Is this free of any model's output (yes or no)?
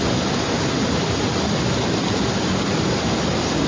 yes